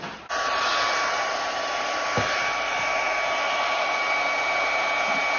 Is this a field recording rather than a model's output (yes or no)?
yes